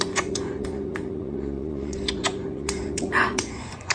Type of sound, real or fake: fake